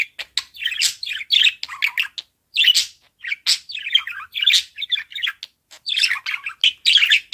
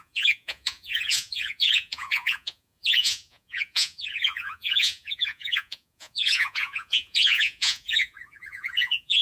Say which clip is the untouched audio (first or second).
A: first